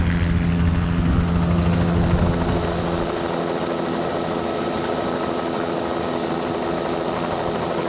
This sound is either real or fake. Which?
real